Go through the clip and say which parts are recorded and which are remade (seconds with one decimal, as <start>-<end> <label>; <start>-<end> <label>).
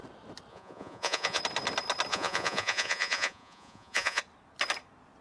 0.0-0.5 recorded; 0.5-1.4 remade; 1.4-2.1 recorded; 2.1-4.2 remade; 4.2-5.2 recorded